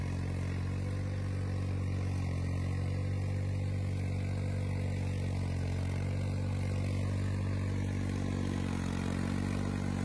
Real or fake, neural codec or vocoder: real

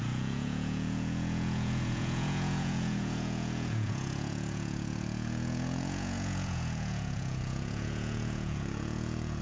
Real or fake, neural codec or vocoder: fake, vocoder, Vocos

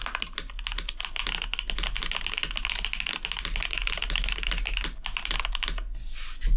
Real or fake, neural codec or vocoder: real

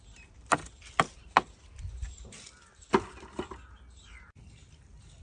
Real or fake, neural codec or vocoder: real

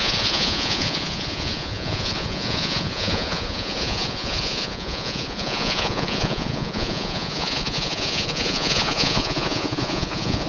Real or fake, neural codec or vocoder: fake, vocoder, Vocos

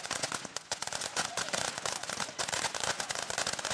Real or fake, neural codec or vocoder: fake, vocoder, Vocos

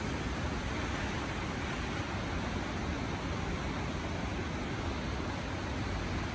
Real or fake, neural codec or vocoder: real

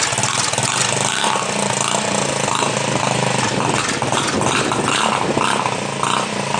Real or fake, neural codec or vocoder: real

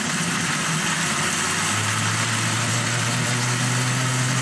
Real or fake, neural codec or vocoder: real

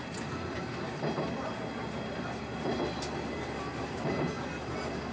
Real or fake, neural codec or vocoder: real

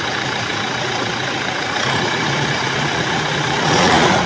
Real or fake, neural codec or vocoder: fake, vocoder, Vocos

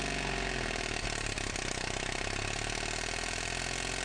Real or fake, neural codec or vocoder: real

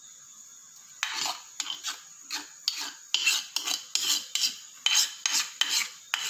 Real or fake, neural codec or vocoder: real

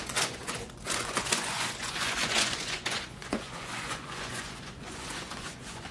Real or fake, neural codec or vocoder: fake, vocoder, Vocos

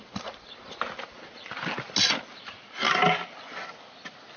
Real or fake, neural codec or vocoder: real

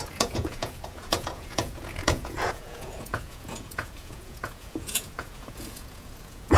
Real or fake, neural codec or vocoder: fake, vocoder, Vocos